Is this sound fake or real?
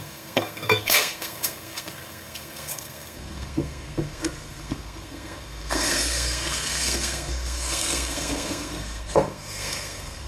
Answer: fake